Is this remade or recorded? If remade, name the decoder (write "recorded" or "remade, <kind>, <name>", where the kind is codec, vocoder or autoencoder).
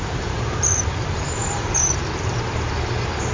remade, vocoder, BigVGAN v2